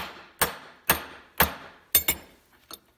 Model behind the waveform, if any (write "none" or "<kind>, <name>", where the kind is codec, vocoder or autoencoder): none